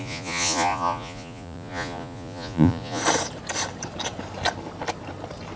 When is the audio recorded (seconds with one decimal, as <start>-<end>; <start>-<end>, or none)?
3.0-5.6